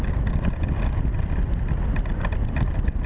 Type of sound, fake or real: real